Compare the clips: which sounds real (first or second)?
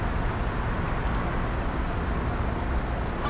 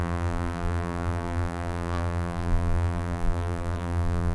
first